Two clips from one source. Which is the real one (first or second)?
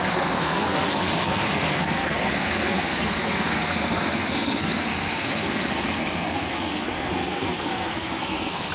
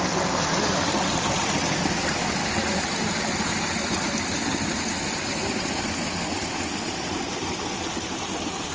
second